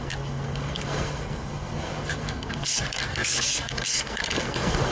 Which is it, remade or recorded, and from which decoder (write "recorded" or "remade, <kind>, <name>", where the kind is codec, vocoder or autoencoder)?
remade, codec, SNAC